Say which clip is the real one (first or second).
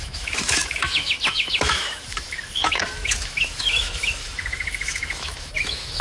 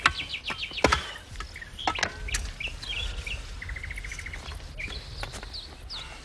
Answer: second